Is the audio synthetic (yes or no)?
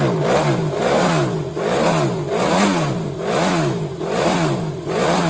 no